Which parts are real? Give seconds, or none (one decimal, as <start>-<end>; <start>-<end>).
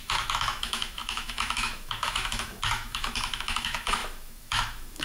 none